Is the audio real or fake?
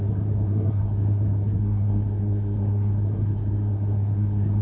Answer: fake